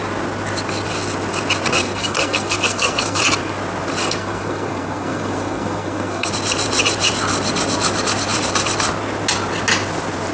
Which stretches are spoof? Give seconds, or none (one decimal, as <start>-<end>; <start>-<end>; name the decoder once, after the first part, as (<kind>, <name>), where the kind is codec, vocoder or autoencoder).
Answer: 1.8-3.2 (codec, SNAC); 4.0-6.3